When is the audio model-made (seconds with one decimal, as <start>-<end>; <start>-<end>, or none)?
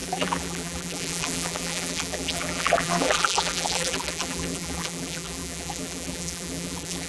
0.0-7.1